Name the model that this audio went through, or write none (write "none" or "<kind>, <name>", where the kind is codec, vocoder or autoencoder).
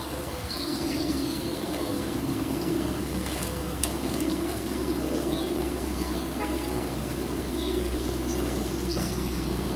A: codec, SNAC